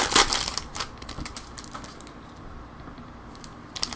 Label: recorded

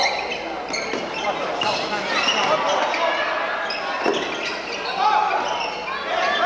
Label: recorded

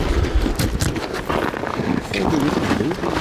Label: recorded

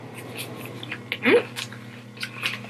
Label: recorded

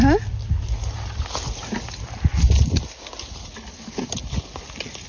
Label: recorded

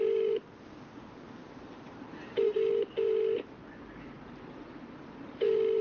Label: remade